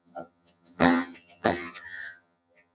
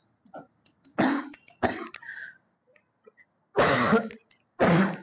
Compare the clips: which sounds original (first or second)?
second